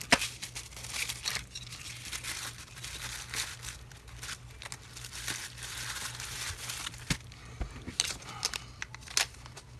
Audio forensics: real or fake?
real